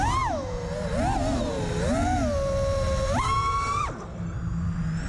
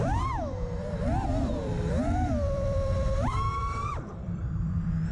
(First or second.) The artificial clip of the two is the second